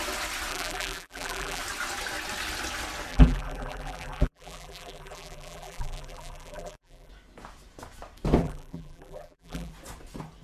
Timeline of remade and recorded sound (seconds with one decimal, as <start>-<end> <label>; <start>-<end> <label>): 0.0-0.5 recorded; 0.5-1.6 remade; 1.6-3.1 recorded; 3.1-7.1 remade; 7.1-8.4 recorded; 8.4-9.7 remade; 9.7-10.4 recorded